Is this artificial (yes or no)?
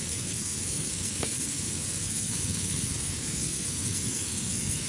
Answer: yes